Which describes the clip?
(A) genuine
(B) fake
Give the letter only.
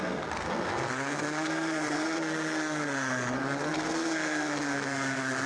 B